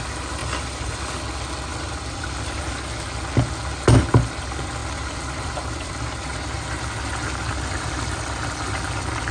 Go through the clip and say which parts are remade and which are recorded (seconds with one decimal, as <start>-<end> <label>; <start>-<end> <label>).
0.0-0.4 recorded; 0.4-1.0 remade; 1.0-1.7 recorded; 1.7-2.6 remade; 2.6-4.8 recorded; 4.8-5.9 remade; 5.9-9.3 recorded